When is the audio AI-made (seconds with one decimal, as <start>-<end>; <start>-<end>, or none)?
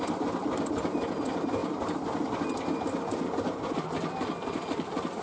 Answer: none